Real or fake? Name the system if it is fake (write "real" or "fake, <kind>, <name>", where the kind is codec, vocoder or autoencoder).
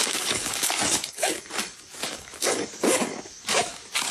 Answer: fake, codec, DAC